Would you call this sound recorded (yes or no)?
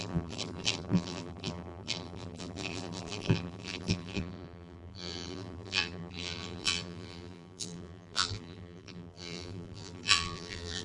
no